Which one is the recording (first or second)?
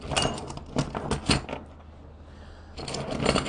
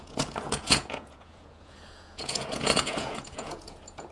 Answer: first